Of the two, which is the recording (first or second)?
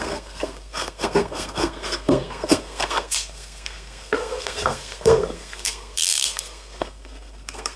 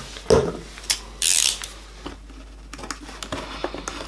second